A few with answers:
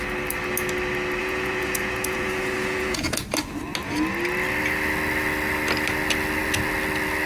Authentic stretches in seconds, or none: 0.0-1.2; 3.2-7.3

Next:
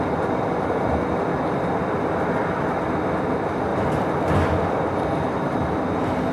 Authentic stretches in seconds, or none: 0.0-6.3

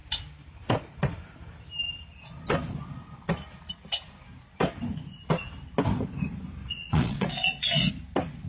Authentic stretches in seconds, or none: 0.0-6.6; 7.9-8.5

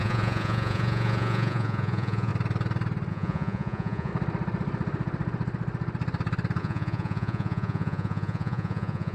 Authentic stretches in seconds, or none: 2.3-3.1; 4.1-6.6

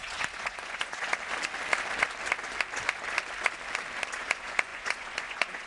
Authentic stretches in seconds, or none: 1.1-4.2

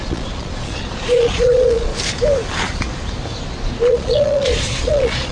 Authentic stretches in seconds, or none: 1.9-3.9

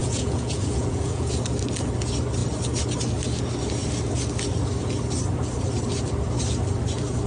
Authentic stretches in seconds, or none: 1.3-7.3

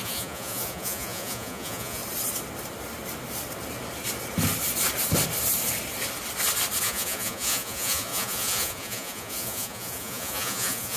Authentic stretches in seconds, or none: 2.0-6.8